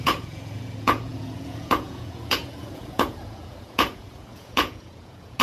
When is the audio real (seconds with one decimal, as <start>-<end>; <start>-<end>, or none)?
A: none